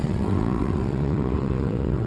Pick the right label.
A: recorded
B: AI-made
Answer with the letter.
B